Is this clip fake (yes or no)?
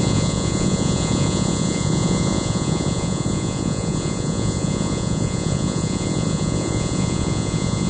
yes